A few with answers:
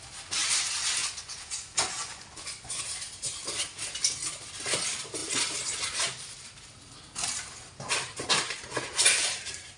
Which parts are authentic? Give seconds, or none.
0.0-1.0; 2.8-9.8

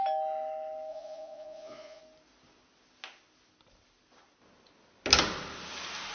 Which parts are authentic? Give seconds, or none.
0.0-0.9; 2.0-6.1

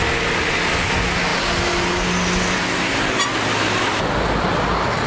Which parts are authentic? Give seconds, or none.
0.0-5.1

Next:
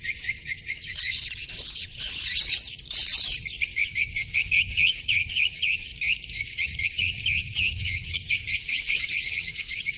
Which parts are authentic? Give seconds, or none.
5.9-6.4

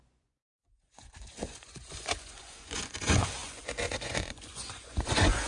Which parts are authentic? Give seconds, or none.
none

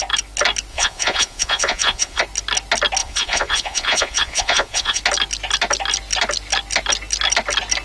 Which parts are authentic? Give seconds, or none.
0.0-0.7; 2.2-3.0; 5.0-7.8

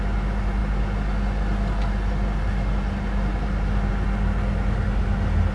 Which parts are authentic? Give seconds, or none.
0.0-5.5

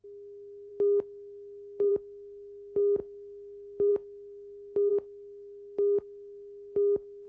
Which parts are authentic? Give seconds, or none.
0.0-7.3